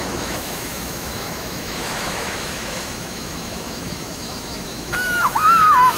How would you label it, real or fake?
fake